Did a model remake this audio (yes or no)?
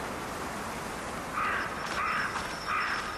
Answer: no